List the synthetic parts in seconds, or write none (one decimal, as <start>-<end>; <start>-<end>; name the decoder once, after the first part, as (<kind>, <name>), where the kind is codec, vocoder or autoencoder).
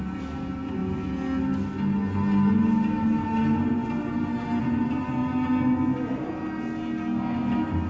none